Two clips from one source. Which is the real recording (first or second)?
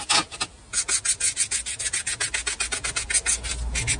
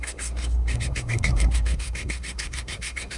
first